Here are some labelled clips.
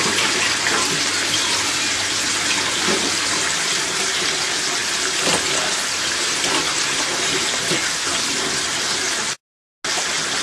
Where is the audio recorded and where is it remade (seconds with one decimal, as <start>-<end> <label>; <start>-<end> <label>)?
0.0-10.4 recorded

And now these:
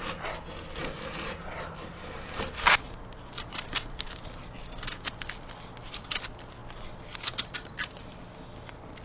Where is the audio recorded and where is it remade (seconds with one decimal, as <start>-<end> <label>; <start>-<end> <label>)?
0.0-0.8 recorded; 0.8-4.4 remade; 4.4-9.0 recorded

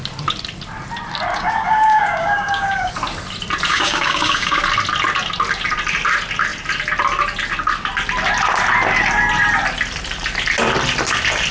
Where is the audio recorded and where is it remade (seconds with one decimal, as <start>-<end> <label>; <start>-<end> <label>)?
0.0-1.3 recorded; 1.3-2.9 remade; 2.9-3.7 recorded; 3.7-4.6 remade; 4.6-11.5 recorded

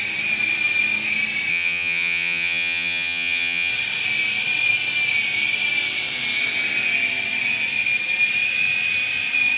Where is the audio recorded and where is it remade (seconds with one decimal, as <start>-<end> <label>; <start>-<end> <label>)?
0.0-1.5 recorded; 1.5-3.7 remade; 3.7-9.6 recorded

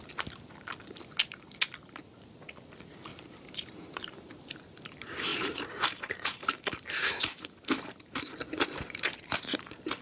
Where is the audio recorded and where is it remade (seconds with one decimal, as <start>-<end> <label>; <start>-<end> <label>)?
0.0-3.1 recorded; 3.1-4.6 remade; 4.6-5.3 recorded; 5.3-10.0 remade

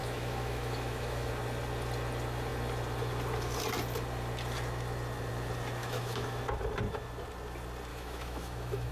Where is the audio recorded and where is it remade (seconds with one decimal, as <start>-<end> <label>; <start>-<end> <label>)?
0.0-1.3 remade; 1.3-5.8 recorded; 5.8-6.4 remade; 6.4-7.9 recorded; 7.9-8.9 remade

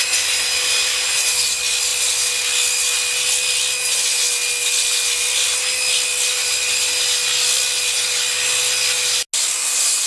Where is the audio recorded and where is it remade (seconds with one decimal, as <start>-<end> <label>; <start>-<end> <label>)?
0.0-10.1 recorded